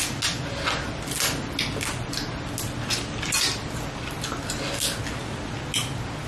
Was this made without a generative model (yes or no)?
yes